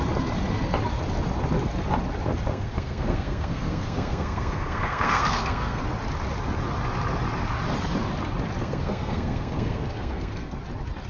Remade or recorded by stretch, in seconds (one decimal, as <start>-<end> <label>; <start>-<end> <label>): 0.0-2.5 recorded; 2.5-5.8 remade; 5.8-8.6 recorded; 8.6-10.6 remade; 10.6-11.1 recorded